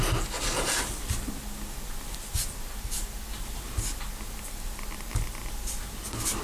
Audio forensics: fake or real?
real